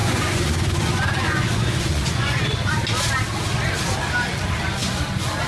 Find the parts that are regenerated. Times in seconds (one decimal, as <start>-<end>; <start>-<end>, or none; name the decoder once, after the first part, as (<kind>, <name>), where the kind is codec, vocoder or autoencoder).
0.0-2.7 (vocoder, Vocos)